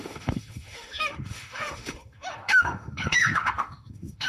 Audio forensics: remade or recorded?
remade